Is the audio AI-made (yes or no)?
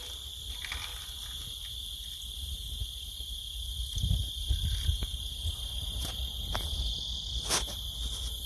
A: no